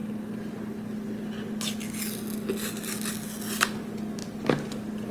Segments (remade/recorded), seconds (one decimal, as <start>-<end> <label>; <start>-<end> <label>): 0.0-5.1 recorded